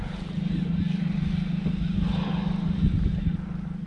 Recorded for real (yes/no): yes